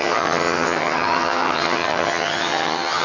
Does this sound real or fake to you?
fake